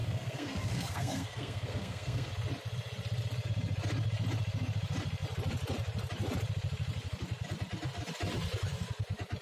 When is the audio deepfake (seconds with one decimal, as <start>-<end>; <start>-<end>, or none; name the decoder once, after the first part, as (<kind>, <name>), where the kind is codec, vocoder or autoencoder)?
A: 0.0-2.3 (codec, SNAC)